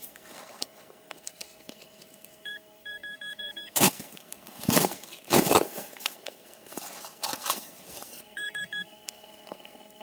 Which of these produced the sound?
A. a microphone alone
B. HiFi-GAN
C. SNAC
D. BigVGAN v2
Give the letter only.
C